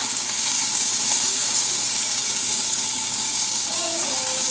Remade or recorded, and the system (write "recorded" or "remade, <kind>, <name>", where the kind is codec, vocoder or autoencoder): remade, codec, DAC